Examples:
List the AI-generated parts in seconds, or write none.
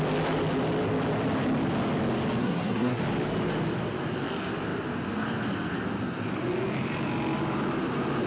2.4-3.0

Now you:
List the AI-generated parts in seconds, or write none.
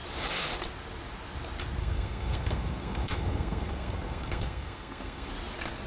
1.8-5.3